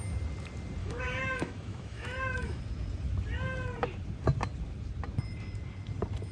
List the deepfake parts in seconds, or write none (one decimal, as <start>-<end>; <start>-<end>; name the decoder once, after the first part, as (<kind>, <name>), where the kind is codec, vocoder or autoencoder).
0.8-2.6 (autoencoder, DAC-VAE)